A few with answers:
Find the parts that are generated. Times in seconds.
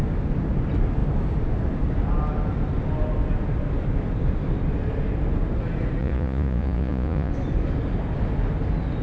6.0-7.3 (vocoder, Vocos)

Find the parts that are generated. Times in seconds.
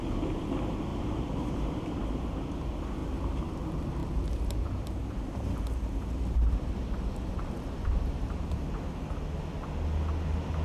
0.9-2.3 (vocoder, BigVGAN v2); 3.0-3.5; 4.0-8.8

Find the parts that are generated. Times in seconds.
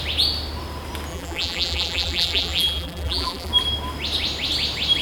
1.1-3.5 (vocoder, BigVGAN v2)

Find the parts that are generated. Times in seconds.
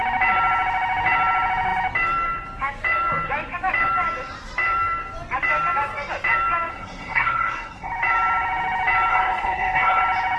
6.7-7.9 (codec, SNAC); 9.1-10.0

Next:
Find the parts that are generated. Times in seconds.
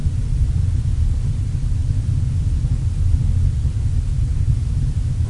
none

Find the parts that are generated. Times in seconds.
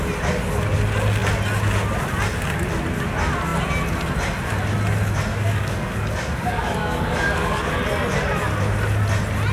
5.3-7.7 (codec, DAC)